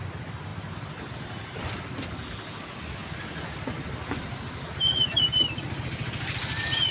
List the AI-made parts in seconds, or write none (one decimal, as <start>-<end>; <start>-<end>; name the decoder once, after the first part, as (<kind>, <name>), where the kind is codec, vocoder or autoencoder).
none